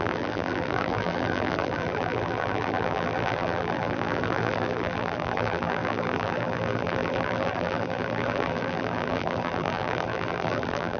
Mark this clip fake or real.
fake